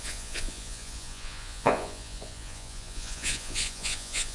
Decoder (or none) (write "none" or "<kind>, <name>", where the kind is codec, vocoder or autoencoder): vocoder, Vocos